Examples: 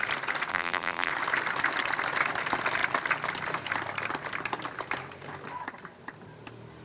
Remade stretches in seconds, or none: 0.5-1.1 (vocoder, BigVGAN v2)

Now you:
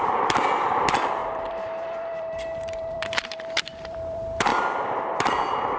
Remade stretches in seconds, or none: 0.0-5.8 (vocoder, BigVGAN v2)

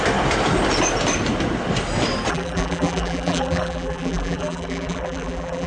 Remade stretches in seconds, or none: 2.3-5.7 (vocoder, BigVGAN v2)

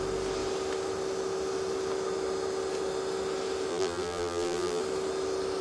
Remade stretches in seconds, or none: 3.7-4.8 (vocoder, BigVGAN v2)

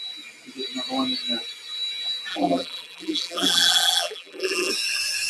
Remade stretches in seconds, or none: 2.3-4.7 (vocoder, BigVGAN v2)

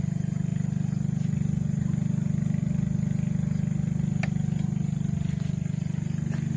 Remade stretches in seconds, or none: none